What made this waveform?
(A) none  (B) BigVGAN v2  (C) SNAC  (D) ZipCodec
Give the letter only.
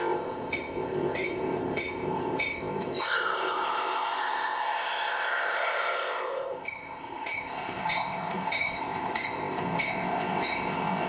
D